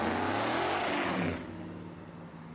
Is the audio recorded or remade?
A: recorded